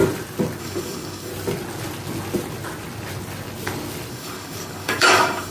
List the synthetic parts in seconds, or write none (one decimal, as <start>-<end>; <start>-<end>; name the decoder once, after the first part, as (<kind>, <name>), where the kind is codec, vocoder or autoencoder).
0.6-1.3 (codec, DAC); 4.1-5.5